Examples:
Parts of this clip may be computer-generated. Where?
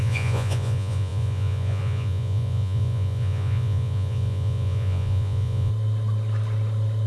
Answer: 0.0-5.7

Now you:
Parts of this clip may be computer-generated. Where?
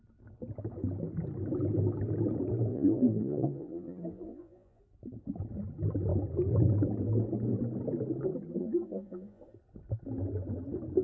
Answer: 2.7-4.8; 8.6-9.4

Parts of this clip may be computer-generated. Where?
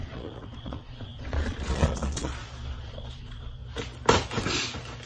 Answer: 0.0-3.6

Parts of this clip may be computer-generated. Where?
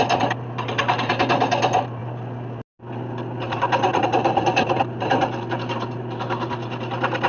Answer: none